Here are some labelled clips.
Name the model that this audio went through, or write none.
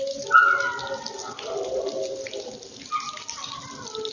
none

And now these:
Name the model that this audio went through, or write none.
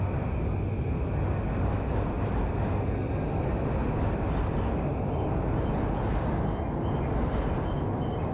none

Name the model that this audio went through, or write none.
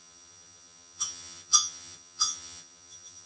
vocoder, HiFi-GAN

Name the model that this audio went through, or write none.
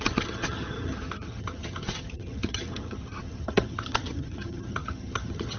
vocoder, HiFi-GAN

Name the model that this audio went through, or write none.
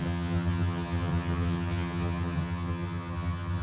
vocoder, HiFi-GAN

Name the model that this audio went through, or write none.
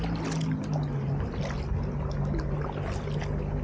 none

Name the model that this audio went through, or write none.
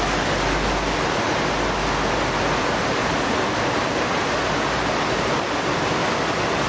none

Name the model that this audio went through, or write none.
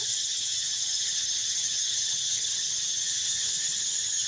vocoder, HiFi-GAN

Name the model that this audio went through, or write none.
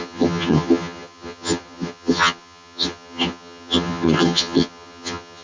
vocoder, HiFi-GAN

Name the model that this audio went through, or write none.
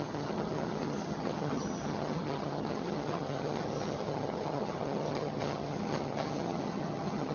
vocoder, HiFi-GAN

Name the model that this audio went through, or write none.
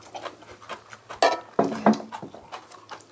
none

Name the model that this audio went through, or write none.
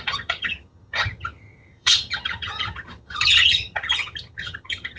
vocoder, HiFi-GAN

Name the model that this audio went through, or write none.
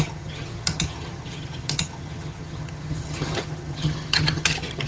vocoder, HiFi-GAN